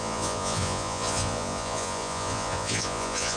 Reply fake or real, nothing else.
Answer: fake